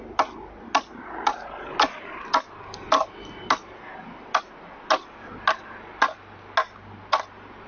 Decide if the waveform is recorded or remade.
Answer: recorded